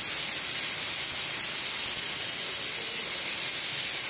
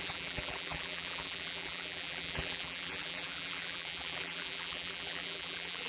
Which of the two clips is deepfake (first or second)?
second